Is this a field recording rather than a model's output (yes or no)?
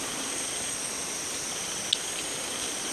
yes